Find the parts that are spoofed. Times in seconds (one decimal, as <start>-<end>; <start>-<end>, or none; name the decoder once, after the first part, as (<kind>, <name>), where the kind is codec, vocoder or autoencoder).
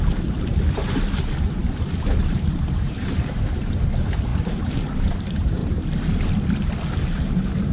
0.0-1.6 (vocoder, BigVGAN v2); 2.2-5.6; 7.1-7.7